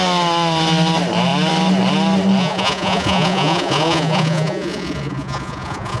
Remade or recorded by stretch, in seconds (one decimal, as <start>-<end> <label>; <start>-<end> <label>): 0.0-2.4 recorded; 2.4-6.0 remade